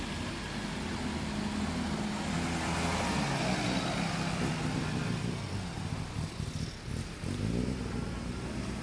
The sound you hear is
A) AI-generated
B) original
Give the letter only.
B